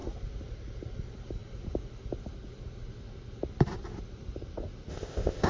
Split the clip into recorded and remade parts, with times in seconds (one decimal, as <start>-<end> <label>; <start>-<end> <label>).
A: 0.0-4.9 recorded; 4.9-5.5 remade